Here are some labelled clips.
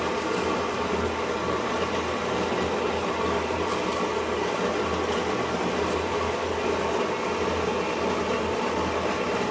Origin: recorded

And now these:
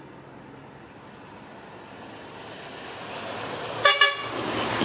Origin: recorded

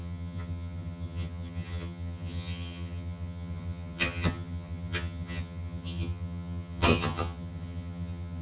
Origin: remade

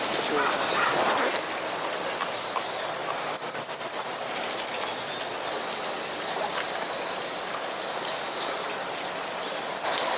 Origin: recorded